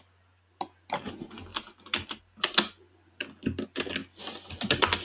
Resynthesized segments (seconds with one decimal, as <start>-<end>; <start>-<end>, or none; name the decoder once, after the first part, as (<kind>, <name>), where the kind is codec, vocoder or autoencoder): none